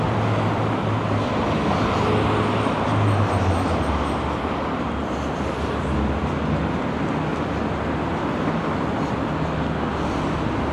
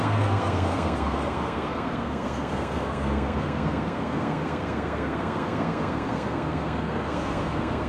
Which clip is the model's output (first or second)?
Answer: second